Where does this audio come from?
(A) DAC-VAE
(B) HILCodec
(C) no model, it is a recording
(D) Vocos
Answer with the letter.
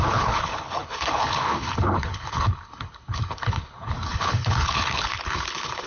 B